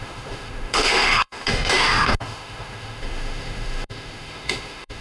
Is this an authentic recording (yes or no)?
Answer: no